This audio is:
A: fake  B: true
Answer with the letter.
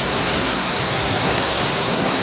A